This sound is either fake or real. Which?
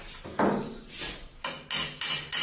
real